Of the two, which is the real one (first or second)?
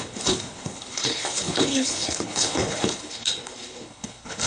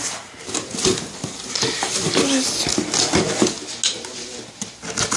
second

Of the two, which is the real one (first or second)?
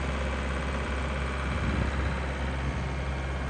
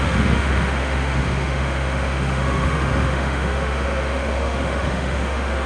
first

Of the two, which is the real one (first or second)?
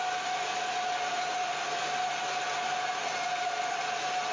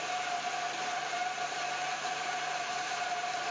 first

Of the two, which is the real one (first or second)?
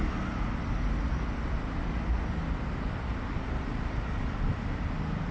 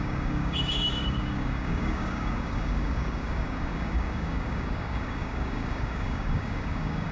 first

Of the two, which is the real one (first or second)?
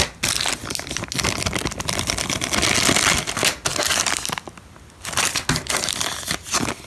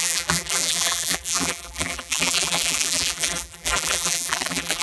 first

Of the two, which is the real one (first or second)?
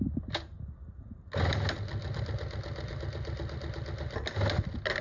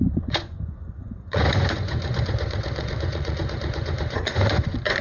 first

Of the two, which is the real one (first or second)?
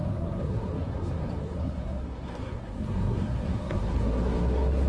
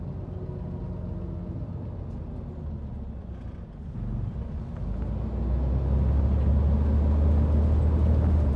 second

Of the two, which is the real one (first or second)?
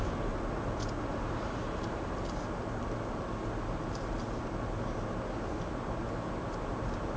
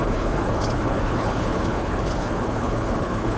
first